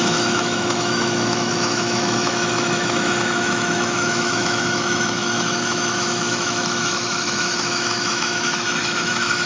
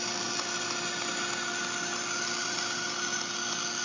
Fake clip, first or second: first